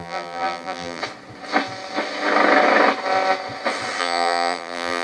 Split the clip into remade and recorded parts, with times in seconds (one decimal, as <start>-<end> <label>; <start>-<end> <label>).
0.0-1.0 remade; 1.0-4.0 recorded; 4.0-5.0 remade